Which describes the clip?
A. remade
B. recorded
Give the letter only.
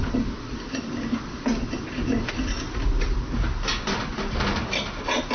B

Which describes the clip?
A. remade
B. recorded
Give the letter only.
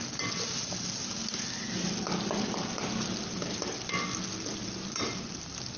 B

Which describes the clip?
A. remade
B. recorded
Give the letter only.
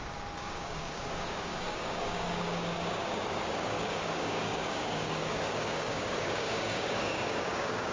A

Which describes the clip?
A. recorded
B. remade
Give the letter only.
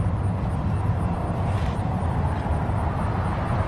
A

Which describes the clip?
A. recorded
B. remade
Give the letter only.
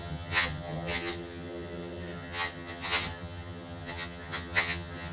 B